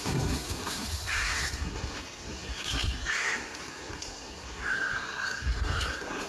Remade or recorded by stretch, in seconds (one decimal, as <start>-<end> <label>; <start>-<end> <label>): 0.0-6.3 remade